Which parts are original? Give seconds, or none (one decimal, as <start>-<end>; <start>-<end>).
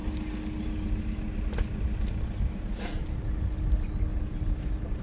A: 0.0-4.1